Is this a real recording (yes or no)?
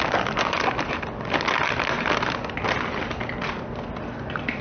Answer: yes